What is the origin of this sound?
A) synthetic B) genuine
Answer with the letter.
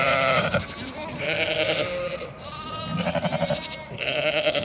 A